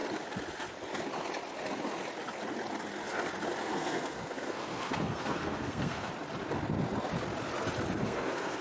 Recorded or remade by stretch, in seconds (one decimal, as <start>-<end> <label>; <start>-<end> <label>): 0.0-3.6 recorded; 3.6-6.1 remade; 6.1-8.0 recorded; 8.0-8.6 remade